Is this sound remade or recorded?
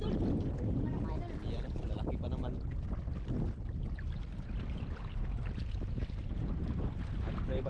recorded